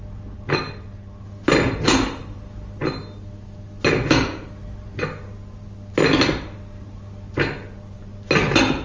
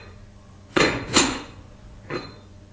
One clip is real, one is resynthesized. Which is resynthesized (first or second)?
second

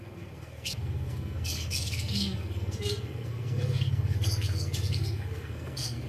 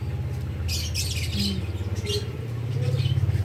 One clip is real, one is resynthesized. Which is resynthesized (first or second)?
first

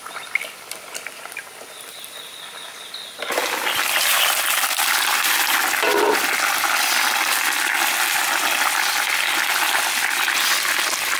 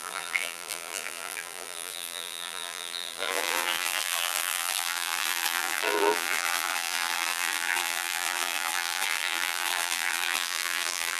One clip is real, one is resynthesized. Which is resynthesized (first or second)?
second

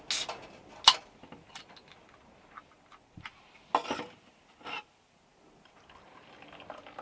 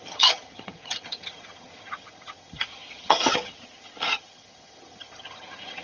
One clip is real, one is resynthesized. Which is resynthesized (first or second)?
second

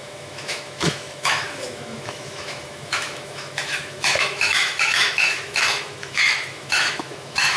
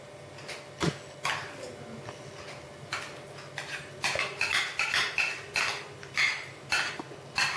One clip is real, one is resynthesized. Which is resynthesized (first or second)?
first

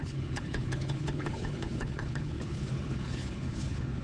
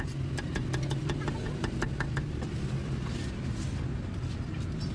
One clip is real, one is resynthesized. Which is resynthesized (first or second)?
first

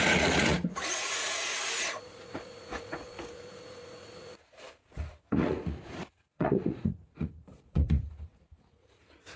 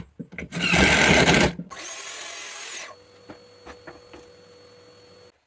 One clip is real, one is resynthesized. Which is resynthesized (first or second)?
first